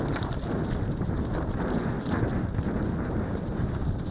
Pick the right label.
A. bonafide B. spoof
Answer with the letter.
A